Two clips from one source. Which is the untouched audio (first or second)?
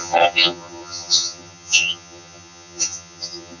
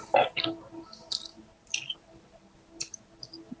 second